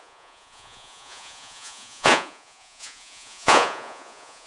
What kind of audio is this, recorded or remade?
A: remade